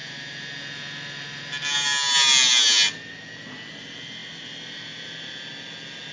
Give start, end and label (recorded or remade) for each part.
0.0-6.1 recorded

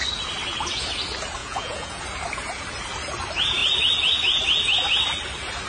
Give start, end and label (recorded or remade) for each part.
0.0-1.4 recorded; 1.4-2.0 remade; 2.0-5.7 recorded

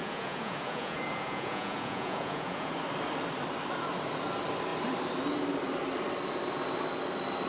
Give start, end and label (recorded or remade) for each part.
0.0-2.7 remade; 2.7-7.5 recorded

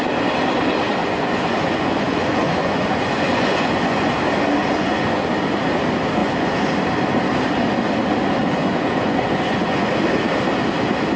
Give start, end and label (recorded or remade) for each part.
0.0-1.0 recorded; 1.0-4.1 remade; 4.1-4.6 recorded; 4.6-5.3 remade; 5.3-6.2 recorded; 6.2-6.7 remade; 6.7-8.4 recorded; 8.4-9.9 remade; 9.9-11.2 recorded

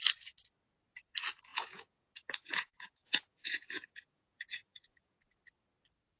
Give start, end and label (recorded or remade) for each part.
0.0-1.5 recorded; 1.5-5.2 remade; 5.2-6.2 recorded

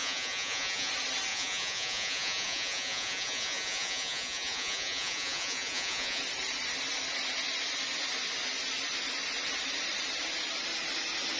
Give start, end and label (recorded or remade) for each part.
0.0-0.9 remade; 0.9-1.3 recorded; 1.3-6.2 remade; 6.2-11.4 recorded

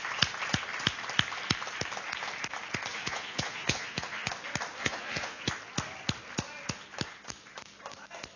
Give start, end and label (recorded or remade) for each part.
0.0-2.9 recorded; 2.9-4.3 remade; 4.3-4.8 recorded; 4.8-5.5 remade; 5.5-8.4 recorded

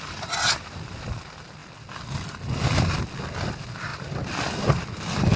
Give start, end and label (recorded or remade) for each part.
0.0-5.4 recorded